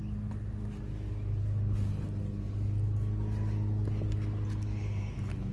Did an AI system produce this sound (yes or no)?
no